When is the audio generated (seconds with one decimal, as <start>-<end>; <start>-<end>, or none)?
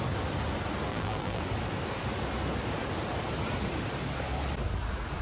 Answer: 0.9-1.4